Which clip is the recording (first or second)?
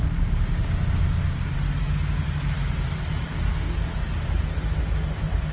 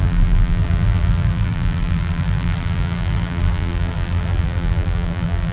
first